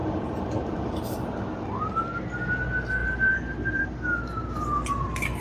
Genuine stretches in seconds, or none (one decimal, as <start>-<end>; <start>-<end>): 1.0-3.0; 3.8-5.4